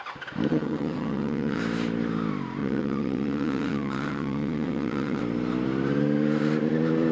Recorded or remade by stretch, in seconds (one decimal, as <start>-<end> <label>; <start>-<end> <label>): 0.0-0.5 recorded; 0.5-1.6 remade; 1.6-2.6 recorded; 2.6-5.2 remade; 5.2-7.1 recorded